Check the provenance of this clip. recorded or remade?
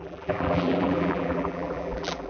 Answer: remade